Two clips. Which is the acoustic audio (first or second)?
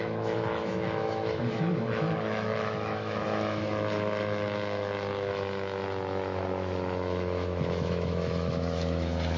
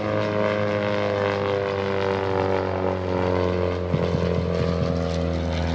second